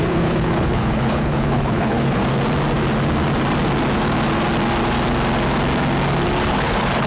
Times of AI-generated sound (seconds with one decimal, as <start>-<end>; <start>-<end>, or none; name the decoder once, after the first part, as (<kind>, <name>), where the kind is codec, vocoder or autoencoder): 0.0-2.2 (codec, HILCodec); 6.5-7.1